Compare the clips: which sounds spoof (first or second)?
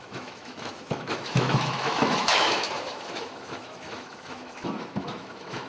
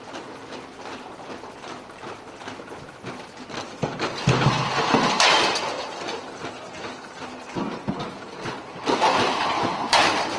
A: first